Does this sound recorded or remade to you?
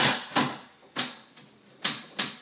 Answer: recorded